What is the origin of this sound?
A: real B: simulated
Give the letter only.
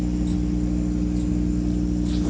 A